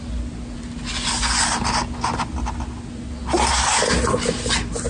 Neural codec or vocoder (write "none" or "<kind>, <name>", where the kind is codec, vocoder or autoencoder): none